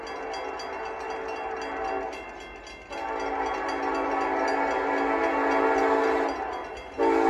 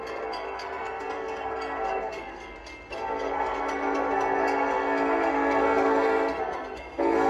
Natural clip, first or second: first